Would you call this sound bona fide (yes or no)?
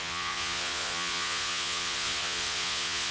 no